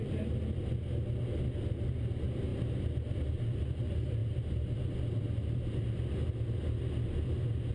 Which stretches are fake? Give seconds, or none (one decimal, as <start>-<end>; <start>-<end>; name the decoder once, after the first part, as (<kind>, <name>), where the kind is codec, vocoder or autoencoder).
none